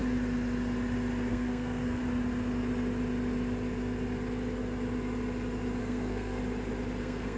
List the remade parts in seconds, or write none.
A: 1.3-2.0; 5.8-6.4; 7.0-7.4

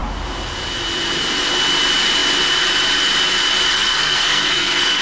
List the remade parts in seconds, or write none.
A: 3.7-5.0